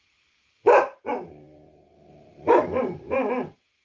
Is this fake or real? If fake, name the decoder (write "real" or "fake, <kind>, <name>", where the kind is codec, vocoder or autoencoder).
fake, vocoder, BigVGAN v2